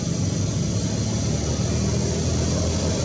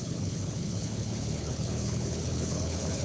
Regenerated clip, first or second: second